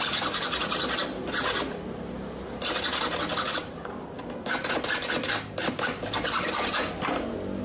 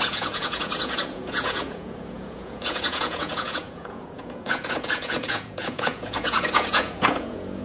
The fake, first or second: second